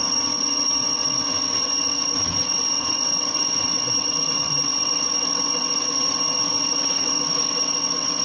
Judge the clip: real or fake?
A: fake